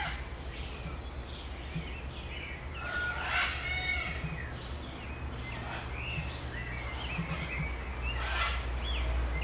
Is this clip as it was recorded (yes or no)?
yes